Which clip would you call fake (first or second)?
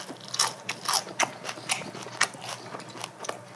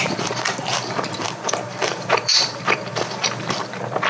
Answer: second